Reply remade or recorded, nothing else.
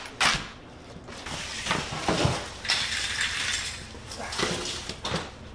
recorded